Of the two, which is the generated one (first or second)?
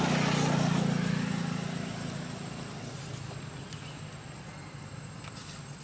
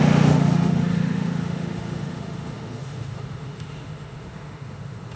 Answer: second